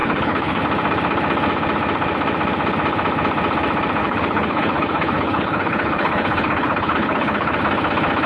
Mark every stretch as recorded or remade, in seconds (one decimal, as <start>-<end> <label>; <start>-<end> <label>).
0.0-0.6 remade; 0.6-4.0 recorded; 4.0-7.6 remade; 7.6-8.3 recorded